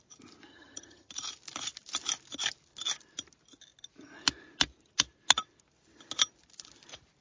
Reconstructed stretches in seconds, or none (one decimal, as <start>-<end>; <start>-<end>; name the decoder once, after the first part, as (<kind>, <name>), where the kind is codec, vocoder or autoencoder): 0.5-1.1 (vocoder, HiFi-GAN)